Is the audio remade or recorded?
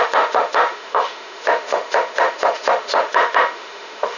remade